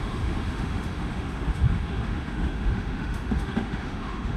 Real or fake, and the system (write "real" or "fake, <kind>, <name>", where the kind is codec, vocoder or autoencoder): fake, autoencoder, DAC-VAE